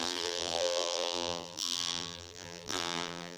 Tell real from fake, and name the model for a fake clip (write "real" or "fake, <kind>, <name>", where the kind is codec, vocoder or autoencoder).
fake, vocoder, BigVGAN v2